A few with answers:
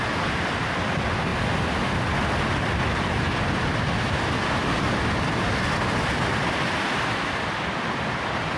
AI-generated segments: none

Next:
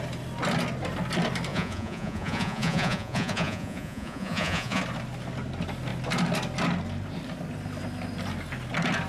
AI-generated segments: 1.5-4.8 (vocoder, Vocos)

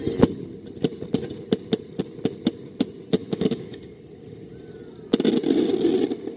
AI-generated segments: 3.2-3.8 (autoencoder, DAC-VAE)

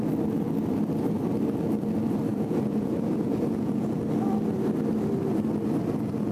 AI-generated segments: 2.3-4.0 (vocoder, Vocos)